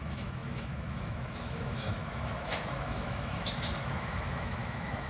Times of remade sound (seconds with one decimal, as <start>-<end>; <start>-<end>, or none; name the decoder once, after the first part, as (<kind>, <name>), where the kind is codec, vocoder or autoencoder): 0.0-5.1 (autoencoder, DAC-VAE)

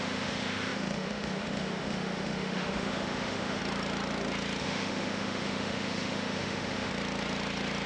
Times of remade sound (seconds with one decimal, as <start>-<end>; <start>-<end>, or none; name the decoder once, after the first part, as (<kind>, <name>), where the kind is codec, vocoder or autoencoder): 0.0-3.6 (autoencoder, DAC-VAE); 4.6-6.9

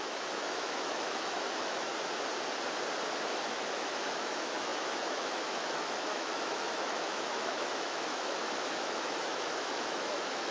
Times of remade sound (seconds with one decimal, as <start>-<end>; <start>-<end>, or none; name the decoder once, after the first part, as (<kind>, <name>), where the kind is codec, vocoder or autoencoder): 0.0-1.9 (autoencoder, DAC-VAE); 3.4-10.5

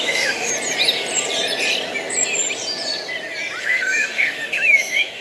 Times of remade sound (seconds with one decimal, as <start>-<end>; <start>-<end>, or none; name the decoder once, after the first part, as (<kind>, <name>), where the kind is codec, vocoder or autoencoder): 0.0-0.5 (autoencoder, DAC-VAE); 3.6-5.2

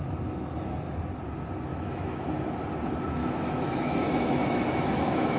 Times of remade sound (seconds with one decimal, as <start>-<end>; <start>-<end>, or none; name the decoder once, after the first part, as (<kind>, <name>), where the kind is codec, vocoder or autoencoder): 1.7-2.5 (autoencoder, DAC-VAE); 3.2-5.4